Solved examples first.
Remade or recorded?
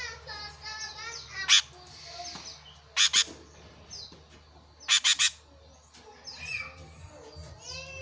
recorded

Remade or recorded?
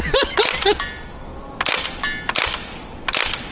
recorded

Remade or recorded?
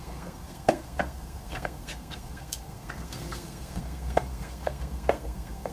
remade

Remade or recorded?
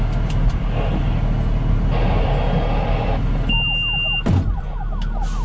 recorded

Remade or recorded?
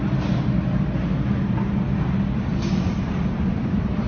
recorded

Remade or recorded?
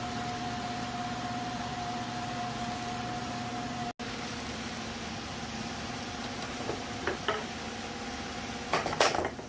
recorded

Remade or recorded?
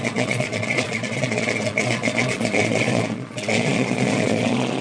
remade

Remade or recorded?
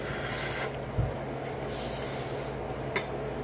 recorded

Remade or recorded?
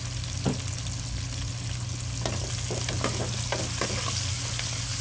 recorded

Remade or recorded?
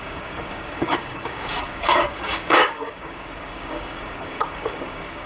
remade